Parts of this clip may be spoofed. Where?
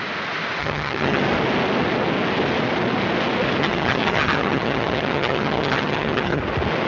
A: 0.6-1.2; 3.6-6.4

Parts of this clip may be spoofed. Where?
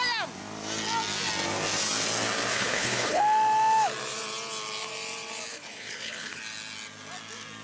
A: 2.5-3.2; 5.5-6.4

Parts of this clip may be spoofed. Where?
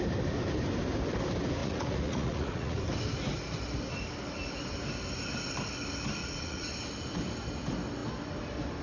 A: 1.6-2.8; 6.2-6.7